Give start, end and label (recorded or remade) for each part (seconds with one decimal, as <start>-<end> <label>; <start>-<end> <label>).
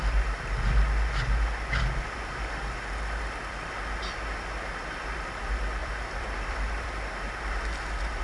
0.0-5.8 recorded; 5.8-7.0 remade; 7.0-8.2 recorded